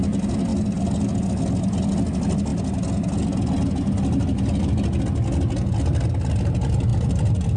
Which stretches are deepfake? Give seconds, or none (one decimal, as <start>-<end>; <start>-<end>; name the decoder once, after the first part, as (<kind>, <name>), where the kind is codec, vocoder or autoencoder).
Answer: 6.9-7.6 (vocoder, BigVGAN v2)